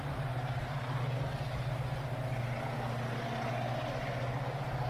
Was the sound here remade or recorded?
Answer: recorded